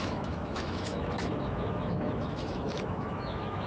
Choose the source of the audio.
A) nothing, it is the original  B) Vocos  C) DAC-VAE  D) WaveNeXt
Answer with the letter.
C